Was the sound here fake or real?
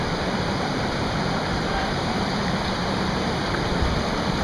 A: fake